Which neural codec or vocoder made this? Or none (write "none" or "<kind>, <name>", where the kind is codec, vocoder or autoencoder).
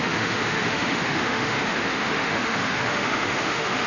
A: autoencoder, DAC-VAE